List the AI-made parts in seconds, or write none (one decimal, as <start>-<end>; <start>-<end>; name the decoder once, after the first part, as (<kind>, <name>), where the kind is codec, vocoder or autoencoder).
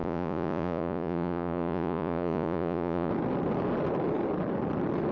0.0-3.1 (vocoder, Vocos)